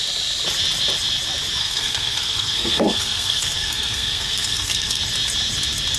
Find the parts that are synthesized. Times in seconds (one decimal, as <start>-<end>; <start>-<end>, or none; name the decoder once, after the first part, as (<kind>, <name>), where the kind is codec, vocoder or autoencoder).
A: 1.6-5.0 (codec, SNAC)